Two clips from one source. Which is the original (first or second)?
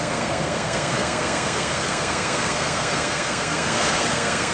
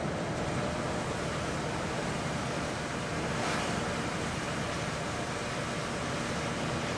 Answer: second